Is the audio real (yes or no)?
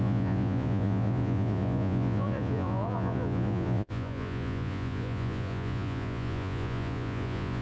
no